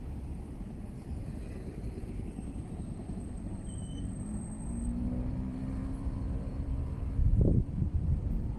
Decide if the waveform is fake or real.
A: fake